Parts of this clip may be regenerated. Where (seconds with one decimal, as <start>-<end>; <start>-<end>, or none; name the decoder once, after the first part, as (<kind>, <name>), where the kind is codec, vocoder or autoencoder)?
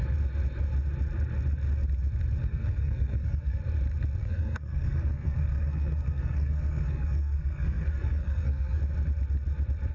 2.4-3.6 (codec, SNAC); 4.2-8.8